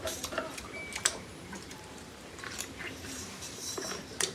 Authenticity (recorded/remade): remade